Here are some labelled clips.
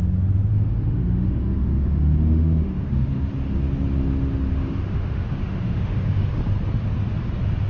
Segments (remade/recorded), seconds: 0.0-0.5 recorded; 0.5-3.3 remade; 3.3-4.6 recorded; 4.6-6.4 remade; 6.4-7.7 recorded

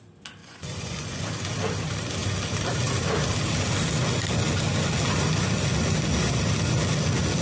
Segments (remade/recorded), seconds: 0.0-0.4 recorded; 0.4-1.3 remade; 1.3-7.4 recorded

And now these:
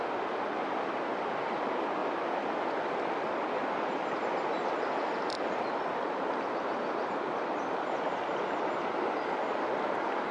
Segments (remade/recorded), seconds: 0.0-10.3 recorded